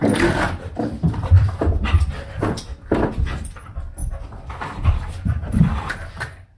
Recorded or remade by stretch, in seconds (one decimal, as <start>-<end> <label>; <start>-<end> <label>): 0.0-2.0 remade; 2.0-4.0 recorded; 4.0-6.6 remade

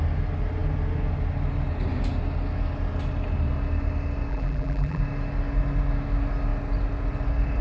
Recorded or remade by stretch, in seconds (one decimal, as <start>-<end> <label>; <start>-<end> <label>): 0.0-4.3 recorded; 4.3-5.0 remade; 5.0-7.6 recorded

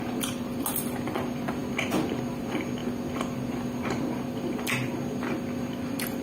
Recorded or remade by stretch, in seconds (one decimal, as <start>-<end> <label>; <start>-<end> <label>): 0.0-6.2 recorded

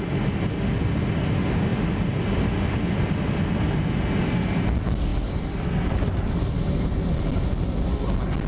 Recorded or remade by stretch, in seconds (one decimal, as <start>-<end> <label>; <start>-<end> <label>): 0.0-8.5 recorded

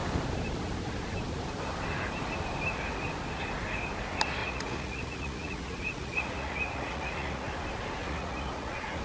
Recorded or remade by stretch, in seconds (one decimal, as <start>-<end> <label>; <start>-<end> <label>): 0.0-4.4 recorded; 4.4-7.5 remade; 7.5-8.0 recorded; 8.0-9.0 remade

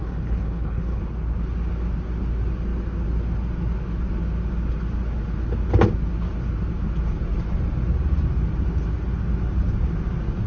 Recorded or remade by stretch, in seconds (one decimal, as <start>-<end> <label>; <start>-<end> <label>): 0.0-1.0 remade; 1.0-10.5 recorded

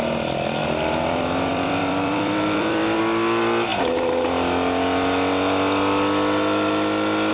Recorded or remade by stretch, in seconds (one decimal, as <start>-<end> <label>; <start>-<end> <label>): 0.0-0.6 recorded; 0.6-3.0 remade; 3.0-7.3 recorded

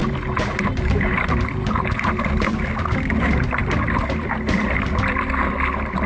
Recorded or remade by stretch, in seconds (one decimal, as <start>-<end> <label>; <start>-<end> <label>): 0.0-2.3 remade; 2.3-6.1 recorded